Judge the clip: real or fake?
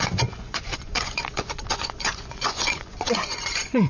fake